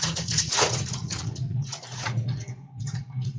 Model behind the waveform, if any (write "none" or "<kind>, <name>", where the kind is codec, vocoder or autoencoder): vocoder, Vocos